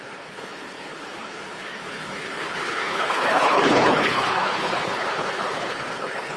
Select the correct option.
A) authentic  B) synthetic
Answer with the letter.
B